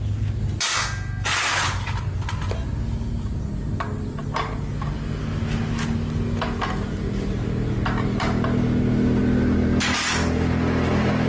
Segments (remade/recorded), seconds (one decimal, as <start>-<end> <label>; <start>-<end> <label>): 0.0-11.3 recorded